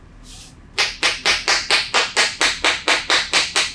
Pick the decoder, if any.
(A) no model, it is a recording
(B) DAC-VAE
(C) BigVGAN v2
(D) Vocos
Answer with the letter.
A